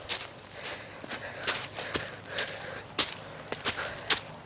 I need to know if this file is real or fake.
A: real